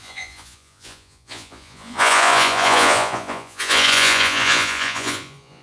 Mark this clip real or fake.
fake